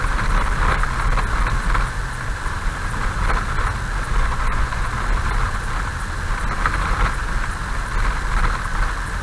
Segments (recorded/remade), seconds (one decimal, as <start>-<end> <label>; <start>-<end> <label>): 0.0-4.2 recorded; 4.2-4.9 remade; 4.9-9.2 recorded